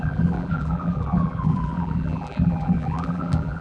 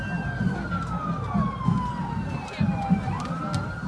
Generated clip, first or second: first